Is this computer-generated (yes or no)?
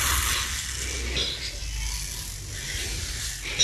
no